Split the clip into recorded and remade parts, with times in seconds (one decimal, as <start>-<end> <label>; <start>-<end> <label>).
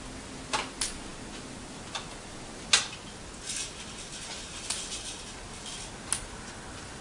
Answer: 0.0-7.0 recorded